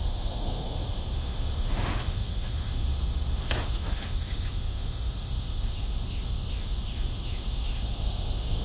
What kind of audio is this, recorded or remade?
remade